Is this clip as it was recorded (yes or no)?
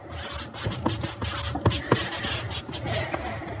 yes